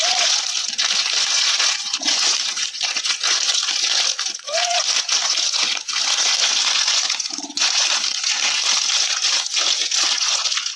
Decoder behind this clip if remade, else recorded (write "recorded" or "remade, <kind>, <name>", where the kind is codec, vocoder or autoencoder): remade, vocoder, Vocos